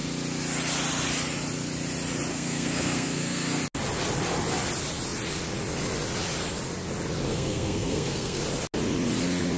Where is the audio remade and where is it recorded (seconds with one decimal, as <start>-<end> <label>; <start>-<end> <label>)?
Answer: 0.0-2.3 recorded; 2.3-3.6 remade; 3.6-7.3 recorded; 7.3-8.4 remade; 8.4-9.6 recorded